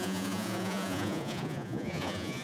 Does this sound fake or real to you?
fake